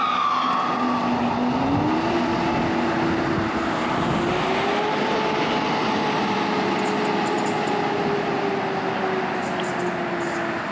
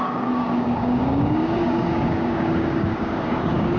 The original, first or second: first